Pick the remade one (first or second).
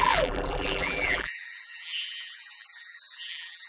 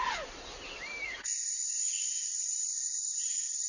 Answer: first